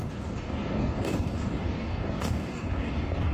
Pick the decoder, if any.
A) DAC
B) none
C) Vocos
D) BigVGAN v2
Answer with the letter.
A